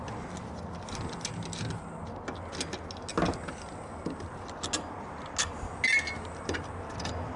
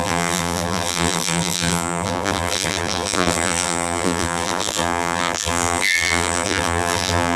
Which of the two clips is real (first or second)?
first